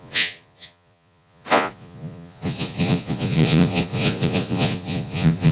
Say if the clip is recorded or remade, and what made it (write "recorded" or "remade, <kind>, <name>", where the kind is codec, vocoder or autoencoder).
remade, vocoder, Vocos